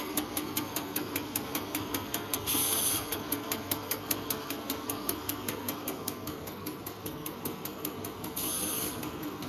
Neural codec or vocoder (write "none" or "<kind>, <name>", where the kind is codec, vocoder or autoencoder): codec, SNAC